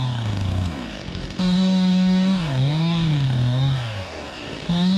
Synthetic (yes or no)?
yes